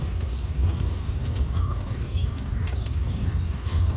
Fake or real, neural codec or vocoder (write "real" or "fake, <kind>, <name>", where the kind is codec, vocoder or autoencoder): fake, codec, DAC